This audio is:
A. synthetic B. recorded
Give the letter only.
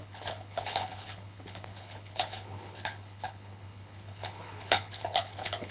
A